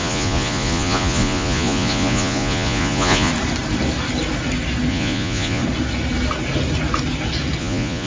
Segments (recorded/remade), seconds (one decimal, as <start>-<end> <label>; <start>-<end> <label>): 0.0-3.3 remade; 3.3-4.9 recorded; 4.9-5.6 remade; 5.6-7.6 recorded; 7.6-8.1 remade